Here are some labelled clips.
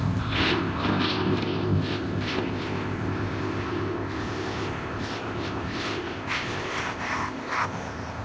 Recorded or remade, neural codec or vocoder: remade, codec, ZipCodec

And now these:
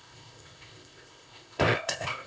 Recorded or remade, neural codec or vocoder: remade, codec, ZipCodec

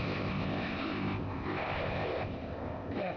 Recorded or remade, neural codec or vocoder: remade, codec, ZipCodec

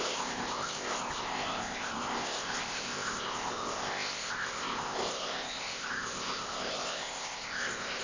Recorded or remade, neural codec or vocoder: remade, codec, ZipCodec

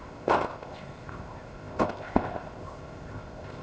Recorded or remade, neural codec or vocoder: remade, codec, ZipCodec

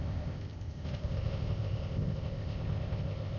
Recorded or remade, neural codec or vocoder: remade, codec, ZipCodec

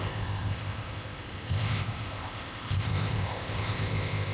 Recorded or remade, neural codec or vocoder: remade, codec, ZipCodec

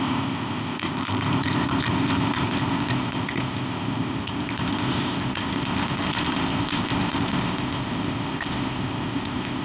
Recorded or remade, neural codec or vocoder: remade, codec, ZipCodec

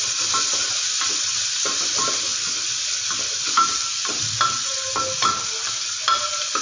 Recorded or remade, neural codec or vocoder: recorded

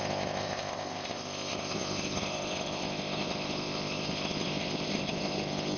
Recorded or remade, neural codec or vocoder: remade, codec, ZipCodec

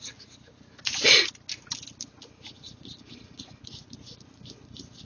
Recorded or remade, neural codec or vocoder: recorded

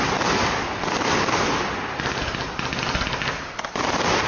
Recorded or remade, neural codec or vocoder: recorded